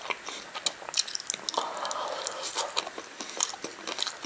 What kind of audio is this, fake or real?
real